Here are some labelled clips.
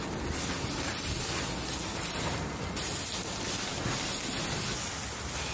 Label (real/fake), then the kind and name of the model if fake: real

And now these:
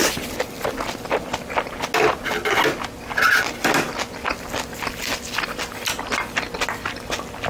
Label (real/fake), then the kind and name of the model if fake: real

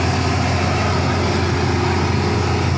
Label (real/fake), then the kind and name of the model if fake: real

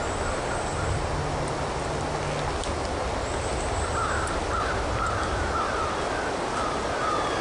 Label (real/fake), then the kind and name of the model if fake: real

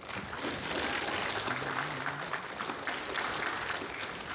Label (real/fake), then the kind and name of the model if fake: real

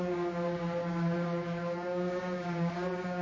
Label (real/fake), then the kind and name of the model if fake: fake, codec, DAC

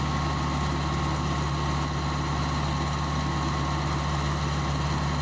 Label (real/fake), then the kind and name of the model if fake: real